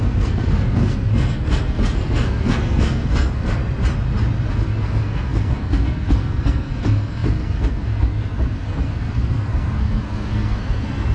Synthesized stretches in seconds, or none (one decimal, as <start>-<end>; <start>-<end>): 0.0-3.6; 4.5-11.1